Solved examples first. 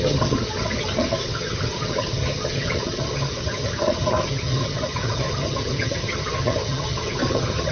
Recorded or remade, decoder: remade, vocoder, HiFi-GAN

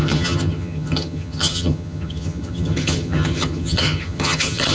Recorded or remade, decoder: remade, vocoder, HiFi-GAN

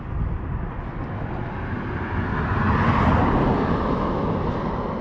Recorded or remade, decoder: recorded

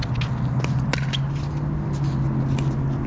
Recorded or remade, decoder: recorded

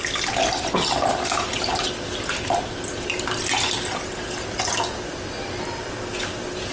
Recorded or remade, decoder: recorded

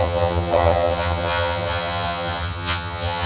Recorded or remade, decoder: remade, vocoder, HiFi-GAN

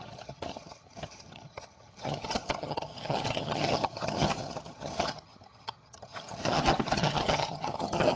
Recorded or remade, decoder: remade, vocoder, HiFi-GAN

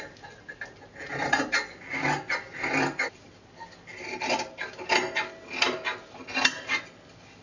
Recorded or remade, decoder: recorded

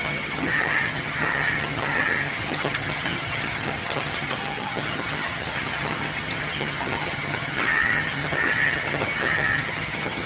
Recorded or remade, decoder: remade, vocoder, HiFi-GAN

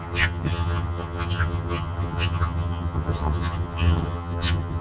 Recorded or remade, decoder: remade, vocoder, HiFi-GAN